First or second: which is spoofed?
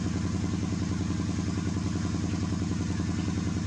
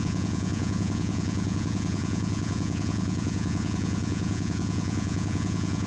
second